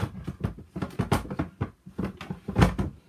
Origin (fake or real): real